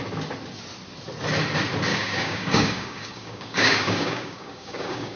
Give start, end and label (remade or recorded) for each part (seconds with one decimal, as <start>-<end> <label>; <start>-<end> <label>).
0.0-1.9 recorded; 1.9-5.2 remade